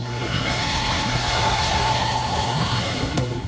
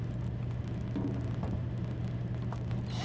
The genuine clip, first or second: second